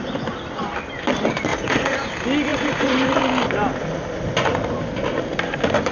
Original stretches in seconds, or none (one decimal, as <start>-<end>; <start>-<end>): 0.0-1.5; 2.1-2.5; 3.2-5.9